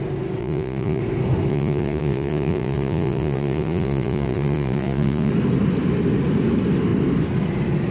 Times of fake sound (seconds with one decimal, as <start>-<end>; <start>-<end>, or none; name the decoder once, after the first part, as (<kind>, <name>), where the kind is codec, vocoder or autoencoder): 0.4-1.0 (vocoder, Vocos); 1.5-5.3